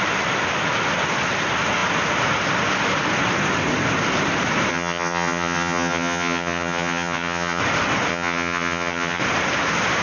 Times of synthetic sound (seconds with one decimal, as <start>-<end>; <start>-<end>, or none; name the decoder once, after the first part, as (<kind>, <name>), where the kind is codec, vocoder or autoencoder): 4.7-7.6 (vocoder, HiFi-GAN); 8.1-9.2